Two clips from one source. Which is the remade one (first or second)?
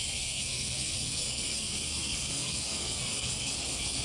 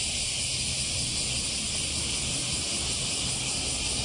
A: first